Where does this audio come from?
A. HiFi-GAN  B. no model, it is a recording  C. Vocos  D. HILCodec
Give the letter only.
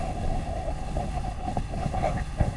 D